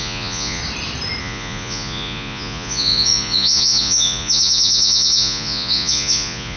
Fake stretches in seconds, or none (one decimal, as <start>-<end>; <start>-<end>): 0.0-0.6; 1.2-6.6